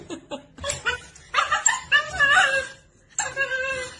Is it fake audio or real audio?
real